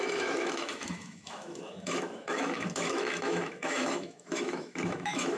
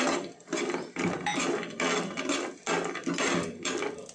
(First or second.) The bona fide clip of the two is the second